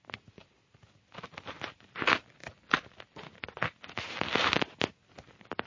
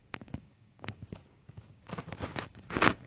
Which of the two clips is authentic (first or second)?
first